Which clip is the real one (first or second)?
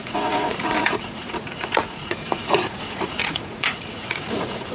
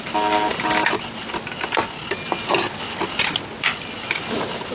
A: second